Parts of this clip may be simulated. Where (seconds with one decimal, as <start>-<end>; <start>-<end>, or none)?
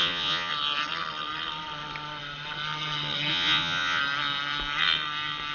0.0-0.5; 3.3-4.0